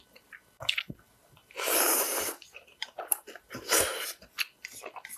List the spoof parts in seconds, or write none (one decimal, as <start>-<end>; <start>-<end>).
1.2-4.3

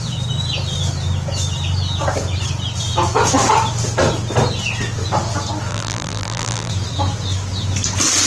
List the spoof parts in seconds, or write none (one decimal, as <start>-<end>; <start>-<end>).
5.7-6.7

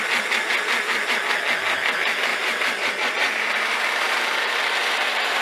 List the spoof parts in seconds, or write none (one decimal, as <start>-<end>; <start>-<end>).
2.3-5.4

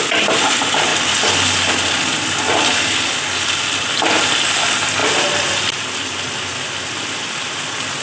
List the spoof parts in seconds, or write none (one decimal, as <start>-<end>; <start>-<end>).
0.9-2.1; 5.0-6.8